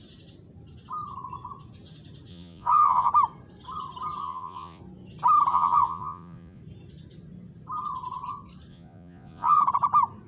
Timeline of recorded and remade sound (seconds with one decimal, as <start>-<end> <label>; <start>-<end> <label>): 0.0-2.3 recorded; 2.3-3.1 remade; 3.1-4.2 recorded; 4.2-4.8 remade; 4.8-5.5 recorded; 5.5-6.6 remade; 6.6-8.7 recorded; 8.7-9.6 remade; 9.6-10.3 recorded